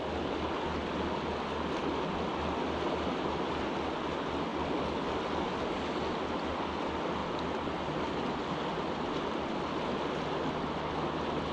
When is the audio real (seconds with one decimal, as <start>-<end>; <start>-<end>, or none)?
0.0-11.5

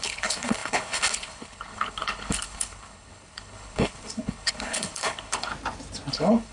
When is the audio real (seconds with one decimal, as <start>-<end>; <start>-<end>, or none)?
5.5-6.1

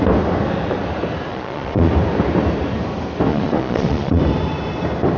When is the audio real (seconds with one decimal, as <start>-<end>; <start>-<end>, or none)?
0.0-1.3; 1.9-3.3; 4.2-5.2

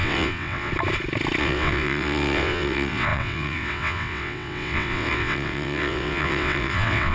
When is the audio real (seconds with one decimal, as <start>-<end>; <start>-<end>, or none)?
0.7-1.4

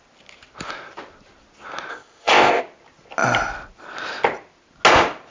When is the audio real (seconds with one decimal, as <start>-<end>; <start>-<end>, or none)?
0.0-1.9; 2.6-5.3

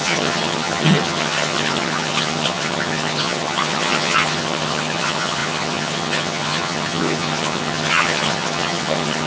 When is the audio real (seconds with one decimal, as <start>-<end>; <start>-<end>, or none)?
none